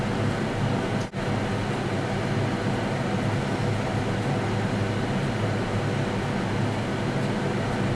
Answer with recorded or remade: recorded